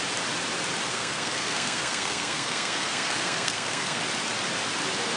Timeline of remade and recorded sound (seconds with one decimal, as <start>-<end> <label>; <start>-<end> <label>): 0.0-0.9 recorded; 0.9-4.0 remade; 4.0-5.2 recorded